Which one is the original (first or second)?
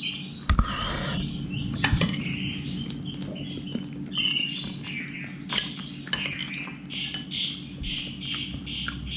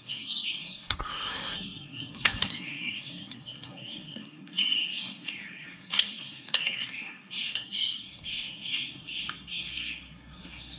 first